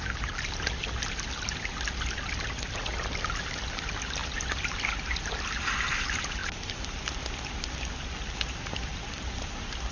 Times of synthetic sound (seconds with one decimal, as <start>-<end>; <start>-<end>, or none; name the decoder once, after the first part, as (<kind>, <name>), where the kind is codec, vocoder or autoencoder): none